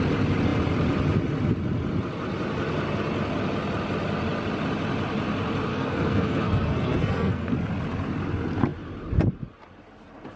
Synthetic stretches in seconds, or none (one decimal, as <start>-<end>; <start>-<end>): 5.7-7.5